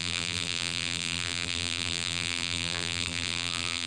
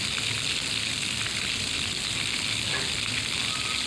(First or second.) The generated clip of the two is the first